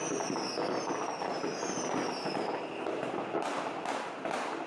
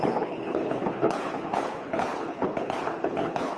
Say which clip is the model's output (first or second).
second